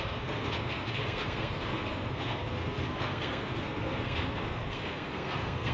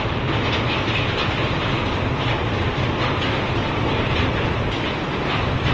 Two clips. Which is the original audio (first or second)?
second